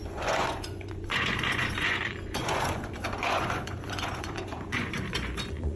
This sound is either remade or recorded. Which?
remade